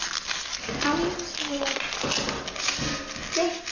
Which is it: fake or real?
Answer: real